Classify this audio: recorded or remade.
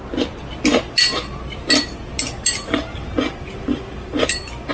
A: recorded